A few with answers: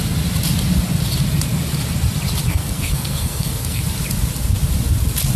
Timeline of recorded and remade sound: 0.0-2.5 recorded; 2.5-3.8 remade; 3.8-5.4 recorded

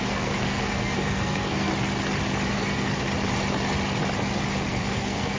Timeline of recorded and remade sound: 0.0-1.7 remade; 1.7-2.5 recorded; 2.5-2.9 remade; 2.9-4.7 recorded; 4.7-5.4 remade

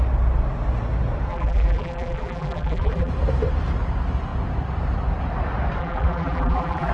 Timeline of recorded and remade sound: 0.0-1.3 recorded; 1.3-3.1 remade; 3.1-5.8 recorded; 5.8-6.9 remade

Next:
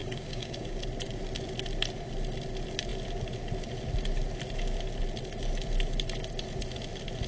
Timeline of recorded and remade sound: 0.0-0.8 remade; 0.8-7.3 recorded